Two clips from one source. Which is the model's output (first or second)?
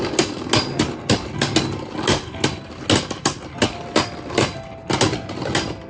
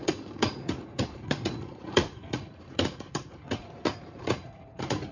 second